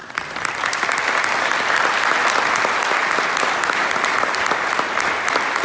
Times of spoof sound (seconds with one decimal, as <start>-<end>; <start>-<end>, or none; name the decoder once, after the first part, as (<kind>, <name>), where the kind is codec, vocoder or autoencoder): none